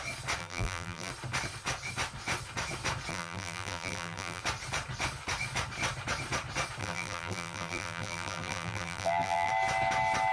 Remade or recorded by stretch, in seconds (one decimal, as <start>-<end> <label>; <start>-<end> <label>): 0.0-0.4 recorded; 0.4-1.1 remade; 1.1-3.1 recorded; 3.1-4.4 remade; 4.4-6.8 recorded; 6.8-9.5 remade; 9.5-10.3 recorded